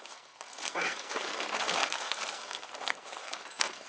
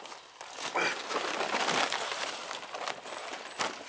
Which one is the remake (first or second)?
first